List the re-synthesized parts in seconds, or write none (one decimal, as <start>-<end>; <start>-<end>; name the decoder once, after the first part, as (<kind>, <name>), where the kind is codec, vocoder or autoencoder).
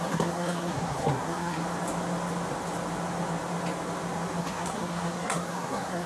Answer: 0.0-1.6 (codec, SNAC); 4.4-6.1